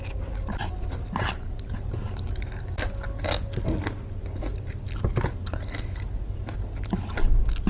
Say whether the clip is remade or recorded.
recorded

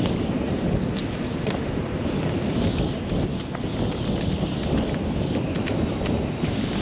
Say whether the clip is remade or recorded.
recorded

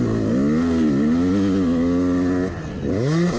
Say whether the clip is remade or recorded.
recorded